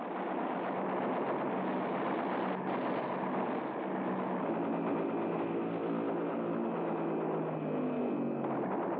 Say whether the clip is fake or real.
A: real